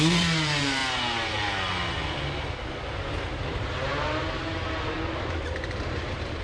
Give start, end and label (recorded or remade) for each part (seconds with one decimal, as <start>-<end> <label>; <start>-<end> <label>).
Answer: 0.0-0.8 remade; 0.8-3.5 recorded; 3.5-3.9 remade; 3.9-5.4 recorded; 5.4-6.4 remade